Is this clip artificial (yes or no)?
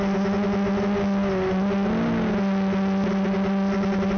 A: no